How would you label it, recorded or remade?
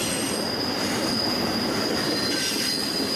remade